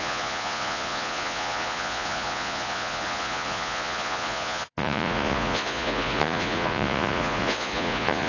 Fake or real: fake